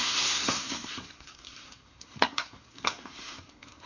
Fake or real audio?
fake